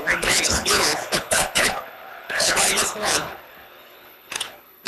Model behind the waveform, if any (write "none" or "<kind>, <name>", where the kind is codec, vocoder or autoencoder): codec, HILCodec